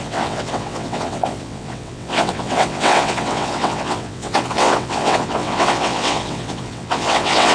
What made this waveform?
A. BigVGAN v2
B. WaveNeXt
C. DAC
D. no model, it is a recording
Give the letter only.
B